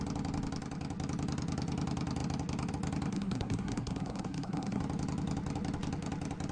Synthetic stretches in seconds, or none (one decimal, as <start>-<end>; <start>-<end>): 3.1-4.8